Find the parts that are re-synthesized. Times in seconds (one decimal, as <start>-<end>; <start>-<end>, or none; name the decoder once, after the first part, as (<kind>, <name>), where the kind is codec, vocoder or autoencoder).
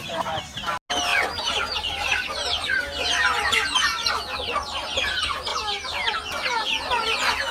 1.1-4.1 (vocoder, BigVGAN v2); 5.5-6.2